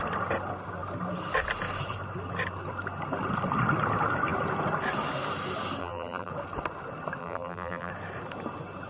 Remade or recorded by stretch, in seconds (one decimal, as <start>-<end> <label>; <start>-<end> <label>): 0.0-5.8 recorded; 5.8-6.3 remade; 6.3-7.2 recorded; 7.2-7.9 remade; 7.9-8.9 recorded